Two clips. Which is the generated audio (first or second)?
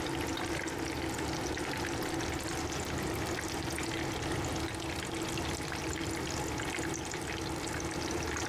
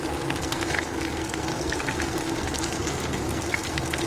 second